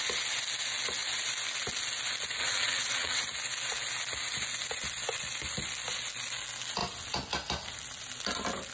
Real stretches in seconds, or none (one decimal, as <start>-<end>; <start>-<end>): 0.0-2.4; 3.2-8.7

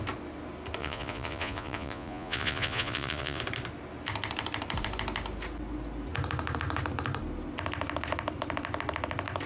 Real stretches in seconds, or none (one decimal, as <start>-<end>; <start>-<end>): 0.0-0.8; 3.4-9.5

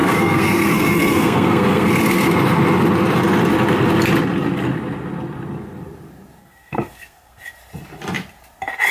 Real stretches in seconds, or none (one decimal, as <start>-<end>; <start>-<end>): 1.9-6.4; 7.4-8.9

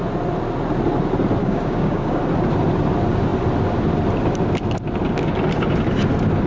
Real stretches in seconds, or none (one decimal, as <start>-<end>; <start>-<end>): 0.0-1.4; 2.2-6.5

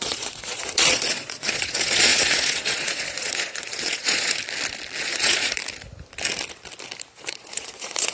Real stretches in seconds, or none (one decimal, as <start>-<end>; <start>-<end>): 4.4-5.0; 5.6-7.2